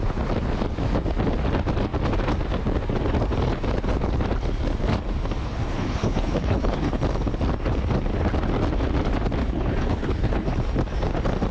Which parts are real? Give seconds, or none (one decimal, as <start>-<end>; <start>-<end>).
0.0-5.4; 7.0-9.4; 10.6-11.5